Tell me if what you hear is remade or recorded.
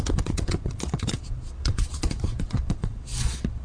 remade